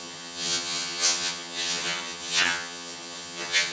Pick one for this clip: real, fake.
fake